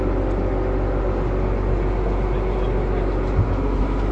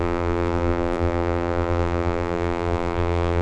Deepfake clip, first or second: second